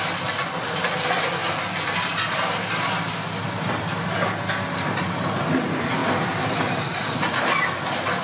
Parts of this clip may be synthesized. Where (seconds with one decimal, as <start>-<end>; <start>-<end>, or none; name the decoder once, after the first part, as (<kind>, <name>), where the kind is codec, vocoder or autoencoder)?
none